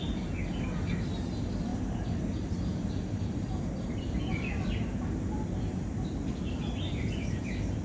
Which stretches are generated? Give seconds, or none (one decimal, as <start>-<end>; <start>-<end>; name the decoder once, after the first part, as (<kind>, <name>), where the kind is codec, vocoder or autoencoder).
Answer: none